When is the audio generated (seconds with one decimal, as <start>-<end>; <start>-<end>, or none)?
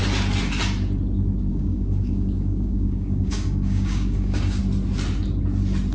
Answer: 1.5-4.6